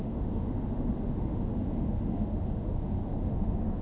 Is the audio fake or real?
fake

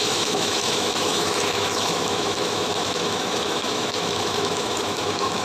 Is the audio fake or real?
fake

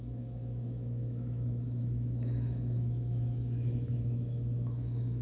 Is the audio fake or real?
fake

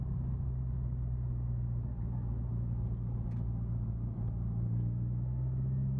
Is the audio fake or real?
real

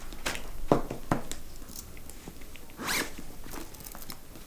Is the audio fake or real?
real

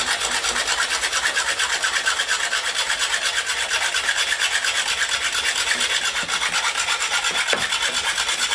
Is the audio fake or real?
real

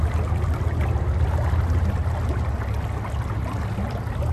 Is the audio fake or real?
real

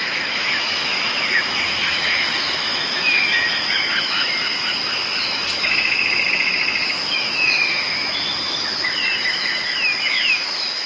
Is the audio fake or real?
fake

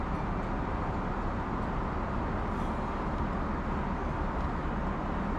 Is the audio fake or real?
real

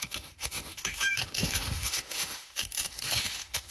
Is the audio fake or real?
fake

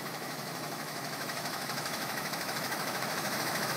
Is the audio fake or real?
fake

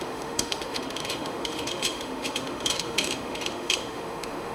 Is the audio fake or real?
fake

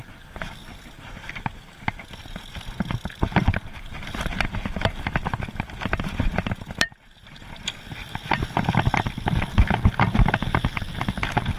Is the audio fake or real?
real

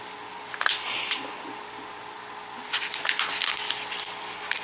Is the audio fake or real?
real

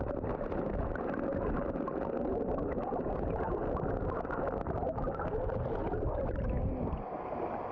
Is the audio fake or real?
real